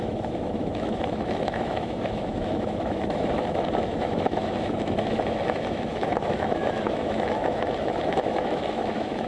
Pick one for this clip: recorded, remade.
remade